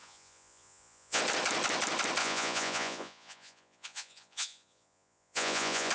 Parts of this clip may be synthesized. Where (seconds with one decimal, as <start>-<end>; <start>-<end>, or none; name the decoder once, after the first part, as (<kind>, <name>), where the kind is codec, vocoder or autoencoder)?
0.0-1.2 (vocoder, Vocos); 2.2-5.9